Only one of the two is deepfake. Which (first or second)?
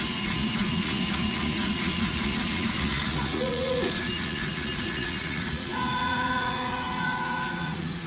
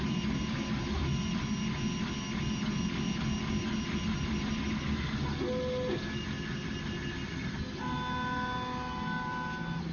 first